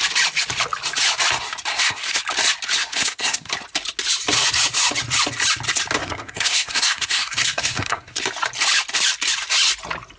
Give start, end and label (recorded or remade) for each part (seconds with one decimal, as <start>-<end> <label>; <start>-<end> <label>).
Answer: 0.0-1.7 recorded; 1.7-2.2 remade; 2.2-2.8 recorded; 2.8-3.5 remade; 3.5-6.0 recorded; 6.0-8.2 remade; 8.2-10.2 recorded